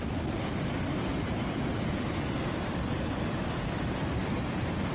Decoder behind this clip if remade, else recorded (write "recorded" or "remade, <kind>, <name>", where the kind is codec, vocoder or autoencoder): remade, vocoder, BigVGAN v2